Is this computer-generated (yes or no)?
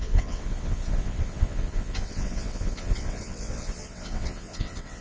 yes